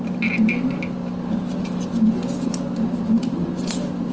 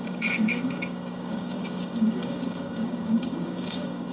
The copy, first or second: second